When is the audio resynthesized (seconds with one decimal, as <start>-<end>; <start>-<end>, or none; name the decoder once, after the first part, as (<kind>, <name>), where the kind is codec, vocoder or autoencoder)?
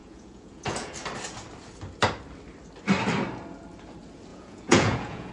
0.0-0.9 (vocoder, Vocos); 4.3-5.3